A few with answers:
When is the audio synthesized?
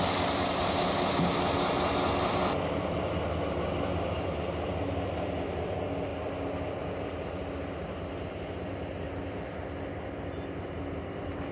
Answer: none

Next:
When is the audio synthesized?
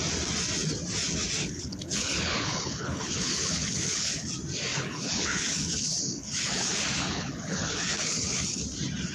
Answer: 1.4-4.3 (codec, HILCodec); 4.7-8.6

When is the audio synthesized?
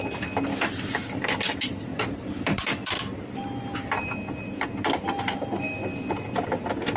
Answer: none